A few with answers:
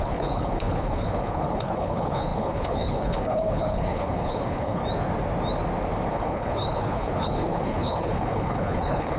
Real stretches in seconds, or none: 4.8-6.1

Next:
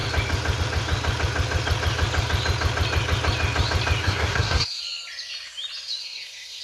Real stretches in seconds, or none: 0.0-4.0; 4.8-6.0

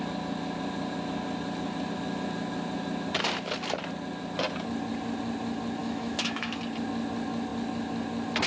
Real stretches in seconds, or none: 0.0-5.8; 6.6-8.5

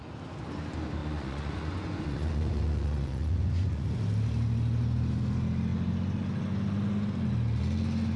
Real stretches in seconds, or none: 0.0-1.0; 4.0-8.2

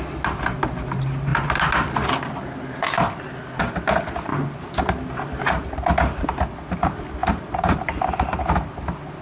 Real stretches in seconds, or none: 0.0-7.2; 8.4-9.2

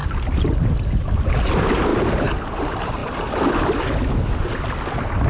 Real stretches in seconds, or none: 0.0-5.3

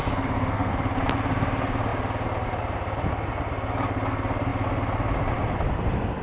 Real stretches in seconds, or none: 0.7-6.2

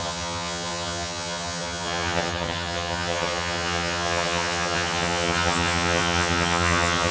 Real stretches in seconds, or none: none